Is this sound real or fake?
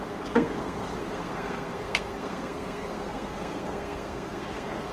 fake